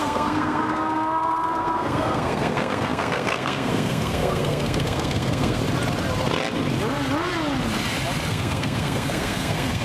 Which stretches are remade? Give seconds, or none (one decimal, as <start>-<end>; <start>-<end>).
0.0-5.6; 8.3-9.8

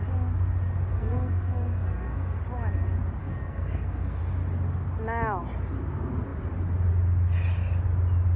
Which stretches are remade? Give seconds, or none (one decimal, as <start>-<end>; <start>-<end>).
0.9-2.4; 3.2-4.2